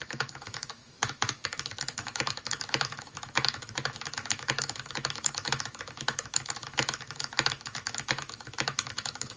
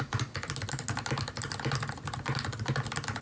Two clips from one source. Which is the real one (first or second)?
second